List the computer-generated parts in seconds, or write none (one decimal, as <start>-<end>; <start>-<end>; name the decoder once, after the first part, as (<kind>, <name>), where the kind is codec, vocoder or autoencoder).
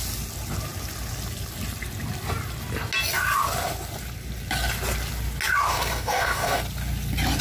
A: 5.7-6.6 (codec, DAC)